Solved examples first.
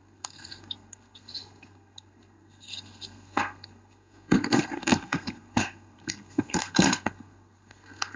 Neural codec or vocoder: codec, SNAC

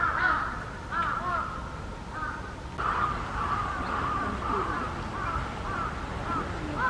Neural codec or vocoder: none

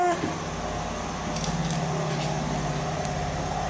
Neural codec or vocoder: none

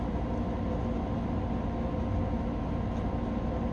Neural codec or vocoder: none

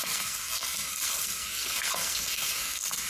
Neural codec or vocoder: codec, SNAC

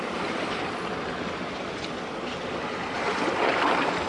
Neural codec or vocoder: none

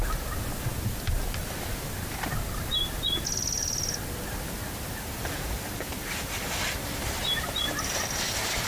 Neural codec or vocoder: none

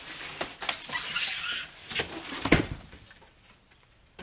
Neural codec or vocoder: none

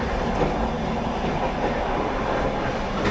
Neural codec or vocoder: none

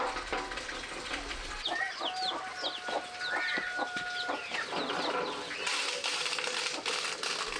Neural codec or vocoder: none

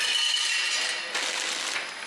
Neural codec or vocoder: none